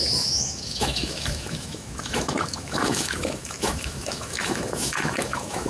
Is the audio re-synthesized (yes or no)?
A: yes